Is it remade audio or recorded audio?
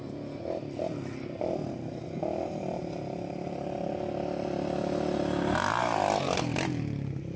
recorded